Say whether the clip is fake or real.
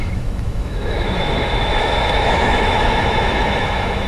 fake